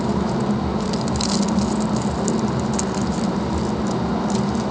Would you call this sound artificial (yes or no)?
no